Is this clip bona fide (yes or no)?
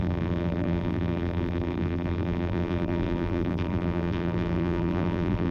no